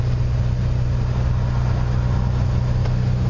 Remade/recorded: recorded